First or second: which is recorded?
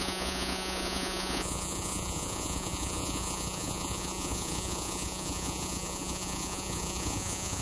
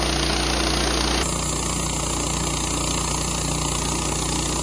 second